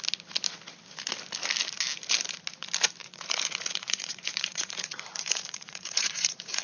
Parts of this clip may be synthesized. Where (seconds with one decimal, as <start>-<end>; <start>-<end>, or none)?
3.0-6.6